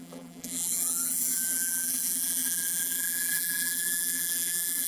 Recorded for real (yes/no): no